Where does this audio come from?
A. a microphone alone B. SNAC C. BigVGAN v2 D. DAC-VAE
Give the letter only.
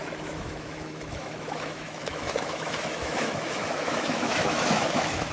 D